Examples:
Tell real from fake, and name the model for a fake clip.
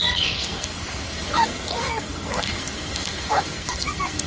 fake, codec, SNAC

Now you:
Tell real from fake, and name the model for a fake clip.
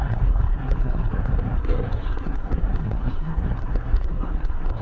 fake, codec, SNAC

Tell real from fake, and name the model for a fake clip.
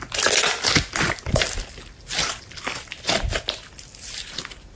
real